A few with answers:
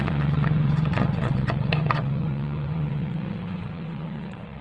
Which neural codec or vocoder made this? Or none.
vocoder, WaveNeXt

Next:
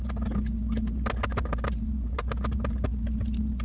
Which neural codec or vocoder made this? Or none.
none